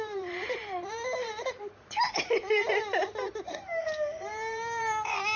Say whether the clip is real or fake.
fake